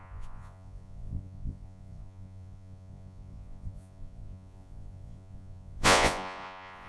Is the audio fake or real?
fake